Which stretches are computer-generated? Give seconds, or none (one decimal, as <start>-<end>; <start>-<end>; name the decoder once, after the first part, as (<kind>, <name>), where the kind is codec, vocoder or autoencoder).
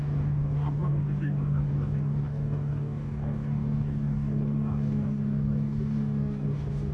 0.0-6.9 (codec, DAC)